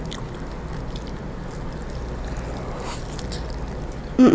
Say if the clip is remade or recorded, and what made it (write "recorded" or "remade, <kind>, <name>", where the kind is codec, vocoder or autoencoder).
recorded